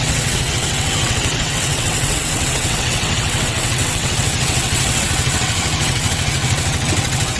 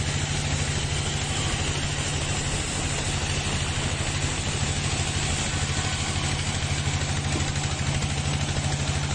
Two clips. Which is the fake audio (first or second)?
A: first